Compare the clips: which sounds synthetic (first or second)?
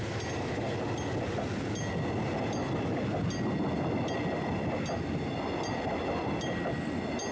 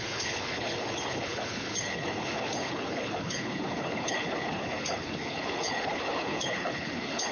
second